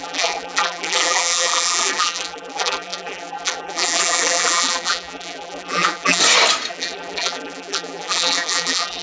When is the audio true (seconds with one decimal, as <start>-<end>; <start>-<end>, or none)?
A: 6.2-6.7